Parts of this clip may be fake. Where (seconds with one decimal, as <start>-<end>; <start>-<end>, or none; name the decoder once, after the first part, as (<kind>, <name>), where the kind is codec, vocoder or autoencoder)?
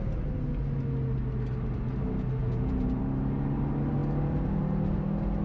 2.4-3.0 (vocoder, Vocos)